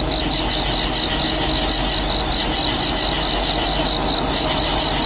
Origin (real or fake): real